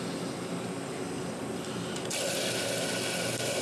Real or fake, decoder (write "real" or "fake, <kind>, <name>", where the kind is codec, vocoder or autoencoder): real